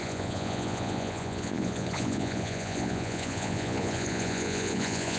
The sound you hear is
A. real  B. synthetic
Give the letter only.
B